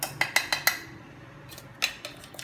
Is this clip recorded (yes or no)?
yes